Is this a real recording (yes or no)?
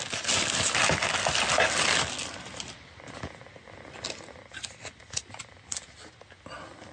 yes